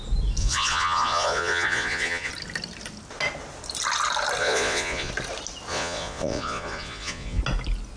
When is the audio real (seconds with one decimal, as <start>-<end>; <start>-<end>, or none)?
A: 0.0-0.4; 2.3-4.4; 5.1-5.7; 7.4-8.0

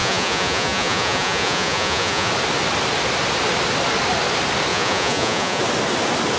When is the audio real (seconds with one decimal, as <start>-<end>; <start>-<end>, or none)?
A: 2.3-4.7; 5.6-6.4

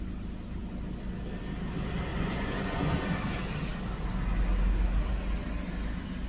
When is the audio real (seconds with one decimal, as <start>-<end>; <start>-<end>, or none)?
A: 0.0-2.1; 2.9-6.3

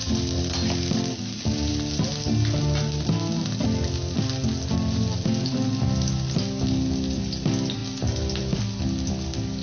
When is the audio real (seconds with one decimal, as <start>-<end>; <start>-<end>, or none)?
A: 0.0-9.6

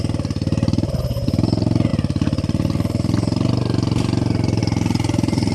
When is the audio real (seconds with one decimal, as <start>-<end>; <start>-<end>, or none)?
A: 0.0-5.5